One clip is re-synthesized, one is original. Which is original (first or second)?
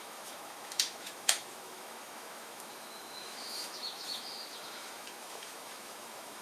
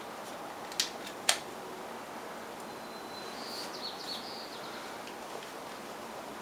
second